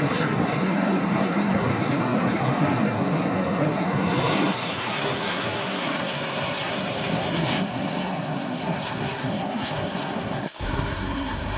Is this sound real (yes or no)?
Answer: no